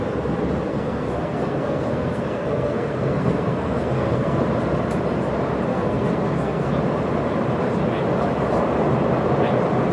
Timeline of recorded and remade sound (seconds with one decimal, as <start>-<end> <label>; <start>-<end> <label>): 0.0-0.7 recorded; 0.7-4.4 remade; 4.4-5.7 recorded; 5.7-6.7 remade; 6.7-9.9 recorded